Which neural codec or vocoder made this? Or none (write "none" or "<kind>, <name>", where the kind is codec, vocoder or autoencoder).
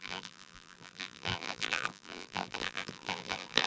vocoder, BigVGAN v2